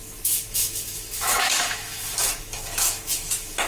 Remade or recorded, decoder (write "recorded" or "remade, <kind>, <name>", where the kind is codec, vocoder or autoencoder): remade, autoencoder, DAC-VAE